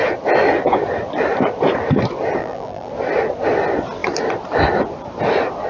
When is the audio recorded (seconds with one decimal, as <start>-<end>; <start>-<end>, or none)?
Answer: 0.0-2.4; 2.9-5.7